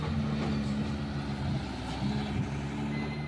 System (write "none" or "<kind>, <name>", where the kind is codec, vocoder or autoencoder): none